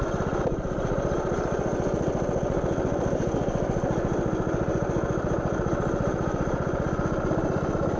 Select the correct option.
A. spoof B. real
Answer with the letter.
B